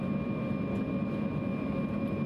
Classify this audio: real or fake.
fake